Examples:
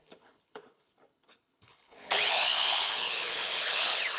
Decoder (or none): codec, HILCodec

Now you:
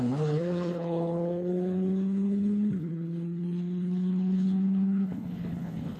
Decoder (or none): codec, HILCodec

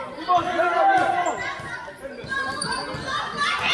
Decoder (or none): none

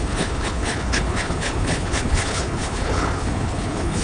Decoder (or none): codec, HILCodec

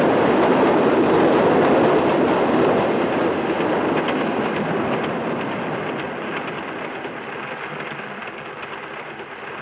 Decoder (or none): none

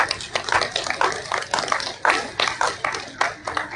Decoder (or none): none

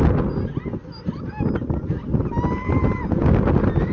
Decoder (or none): none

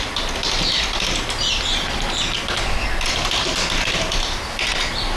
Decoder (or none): none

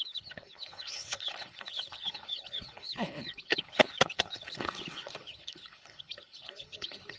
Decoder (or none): codec, HILCodec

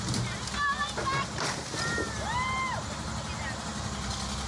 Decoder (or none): none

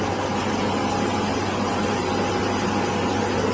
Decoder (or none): none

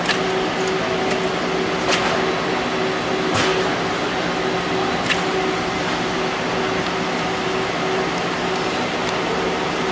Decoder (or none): none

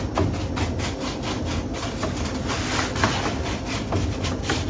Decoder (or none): none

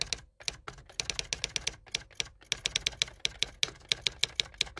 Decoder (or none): none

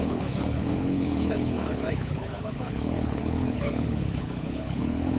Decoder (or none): codec, HILCodec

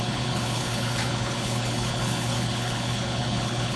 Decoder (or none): codec, HILCodec